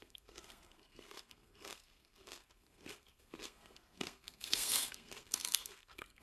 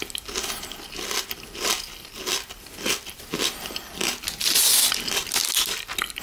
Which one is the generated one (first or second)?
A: first